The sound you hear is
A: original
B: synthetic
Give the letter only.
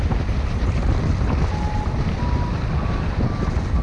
A